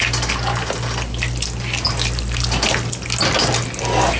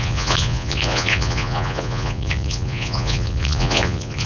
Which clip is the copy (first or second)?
second